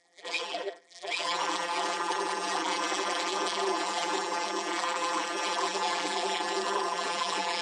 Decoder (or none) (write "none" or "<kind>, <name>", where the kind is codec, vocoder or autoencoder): vocoder, BigVGAN v2